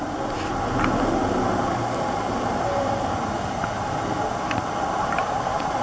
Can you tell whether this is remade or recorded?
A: recorded